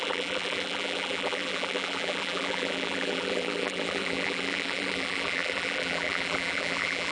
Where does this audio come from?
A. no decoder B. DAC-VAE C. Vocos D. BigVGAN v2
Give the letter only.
D